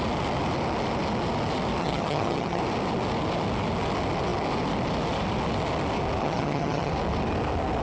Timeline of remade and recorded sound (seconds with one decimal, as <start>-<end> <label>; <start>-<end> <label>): 0.0-1.8 recorded; 1.8-2.6 remade; 2.6-6.2 recorded; 6.2-6.9 remade; 6.9-7.8 recorded